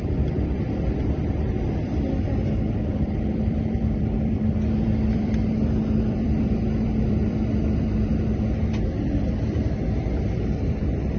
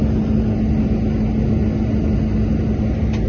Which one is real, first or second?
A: second